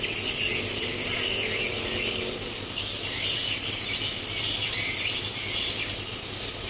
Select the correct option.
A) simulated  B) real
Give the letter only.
B